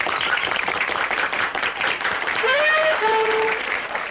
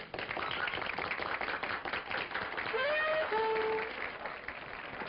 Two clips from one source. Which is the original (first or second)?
second